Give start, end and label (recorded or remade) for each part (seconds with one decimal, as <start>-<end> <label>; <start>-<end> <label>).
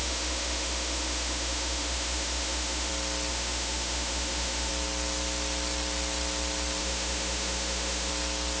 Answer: 0.0-2.9 remade; 2.9-3.3 recorded; 3.3-4.7 remade; 4.7-6.8 recorded; 6.8-8.1 remade; 8.1-8.6 recorded